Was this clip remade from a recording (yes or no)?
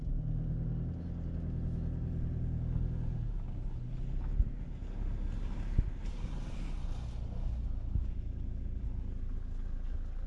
no